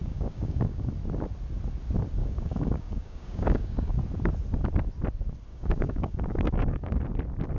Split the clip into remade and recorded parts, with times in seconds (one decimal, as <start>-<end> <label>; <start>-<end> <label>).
0.0-0.9 remade; 0.9-2.2 recorded; 2.2-4.0 remade; 4.0-5.5 recorded; 5.5-7.0 remade; 7.0-7.6 recorded